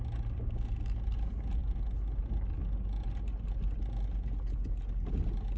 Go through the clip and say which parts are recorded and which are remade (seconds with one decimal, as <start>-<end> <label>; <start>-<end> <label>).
0.0-5.6 recorded